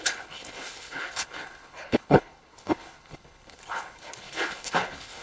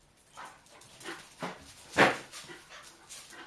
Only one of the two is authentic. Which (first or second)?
second